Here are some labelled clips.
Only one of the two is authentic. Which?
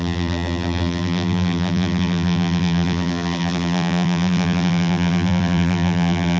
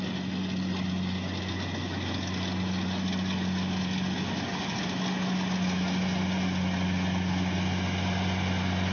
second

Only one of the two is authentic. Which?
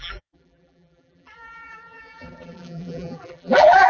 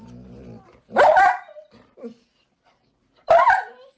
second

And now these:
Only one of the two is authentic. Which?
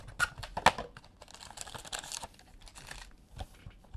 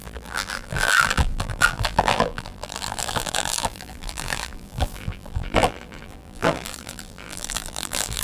first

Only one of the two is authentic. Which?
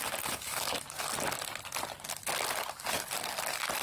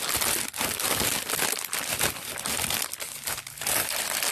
first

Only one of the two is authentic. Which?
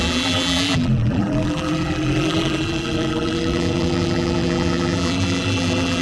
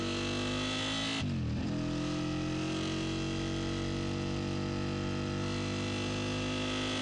second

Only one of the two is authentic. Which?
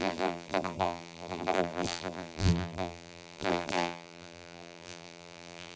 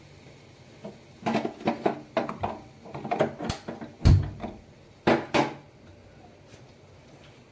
second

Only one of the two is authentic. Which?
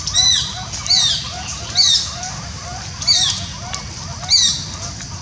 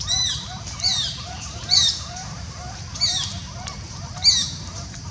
first